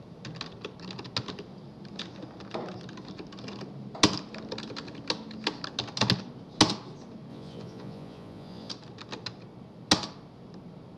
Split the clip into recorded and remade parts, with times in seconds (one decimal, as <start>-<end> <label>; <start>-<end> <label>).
0.0-7.3 recorded; 7.3-8.7 remade; 8.7-11.0 recorded